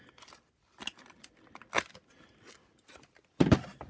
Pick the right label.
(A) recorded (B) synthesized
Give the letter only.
A